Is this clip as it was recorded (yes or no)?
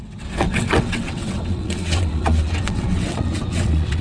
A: no